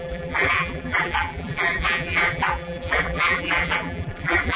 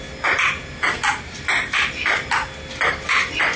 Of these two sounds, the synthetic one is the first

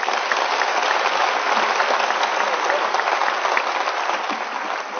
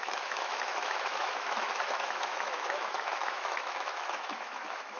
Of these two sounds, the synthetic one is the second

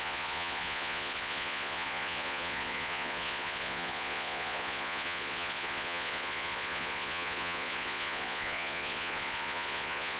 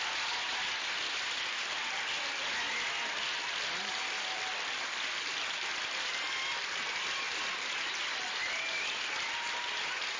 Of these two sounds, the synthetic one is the first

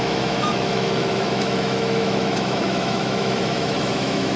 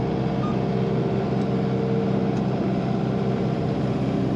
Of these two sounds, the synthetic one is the first